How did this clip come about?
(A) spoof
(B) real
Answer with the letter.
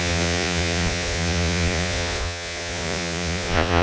A